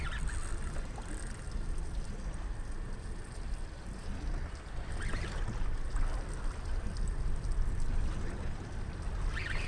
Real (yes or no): yes